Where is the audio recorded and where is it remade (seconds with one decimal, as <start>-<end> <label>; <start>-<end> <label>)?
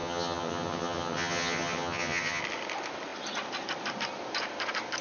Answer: 0.0-2.4 remade; 2.4-5.0 recorded